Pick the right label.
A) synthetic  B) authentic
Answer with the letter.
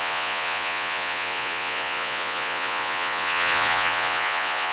A